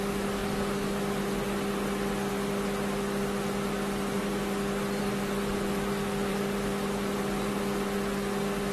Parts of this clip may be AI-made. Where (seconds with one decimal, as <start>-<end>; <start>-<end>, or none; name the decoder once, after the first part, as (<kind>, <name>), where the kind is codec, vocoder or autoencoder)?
none